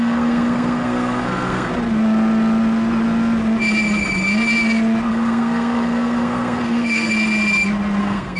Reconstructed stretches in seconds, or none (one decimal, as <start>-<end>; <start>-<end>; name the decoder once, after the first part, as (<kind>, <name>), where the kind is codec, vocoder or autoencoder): 0.0-1.7 (codec, SNAC); 5.1-7.1; 8.0-8.4